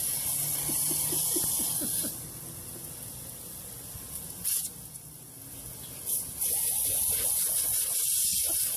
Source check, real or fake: real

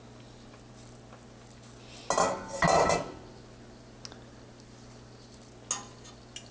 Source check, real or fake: real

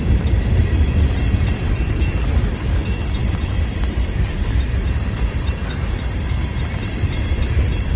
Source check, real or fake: fake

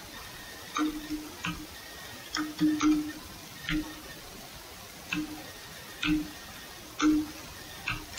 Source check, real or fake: real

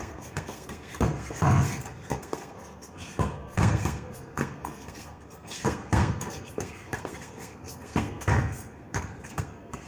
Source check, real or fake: fake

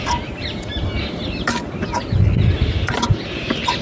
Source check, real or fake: real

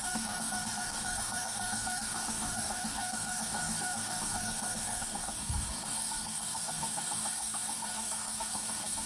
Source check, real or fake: fake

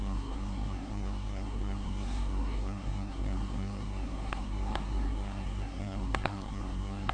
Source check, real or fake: fake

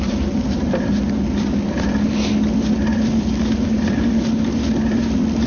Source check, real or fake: fake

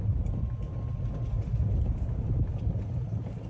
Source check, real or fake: real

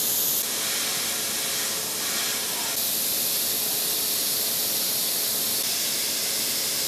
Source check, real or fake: real